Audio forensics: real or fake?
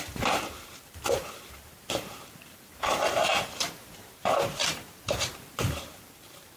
fake